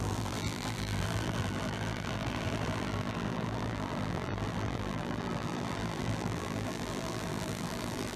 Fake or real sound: fake